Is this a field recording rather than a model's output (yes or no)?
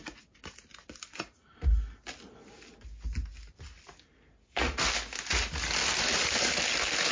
yes